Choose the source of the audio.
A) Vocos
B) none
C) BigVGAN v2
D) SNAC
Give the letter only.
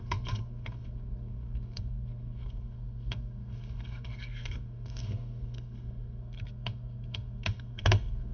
D